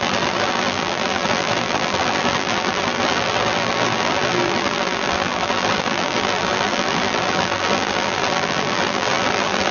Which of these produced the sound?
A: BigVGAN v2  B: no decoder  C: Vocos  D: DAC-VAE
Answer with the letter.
A